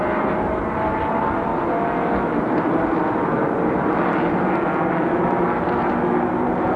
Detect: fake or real real